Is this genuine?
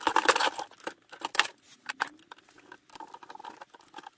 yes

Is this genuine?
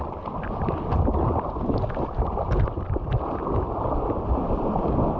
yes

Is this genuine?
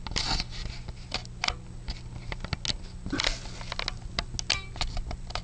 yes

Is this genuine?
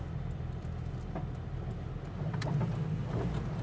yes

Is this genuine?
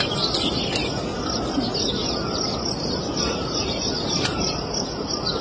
yes